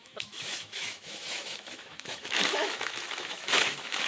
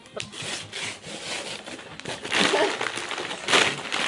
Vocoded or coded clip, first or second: first